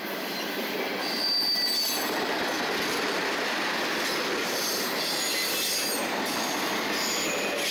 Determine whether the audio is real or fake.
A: real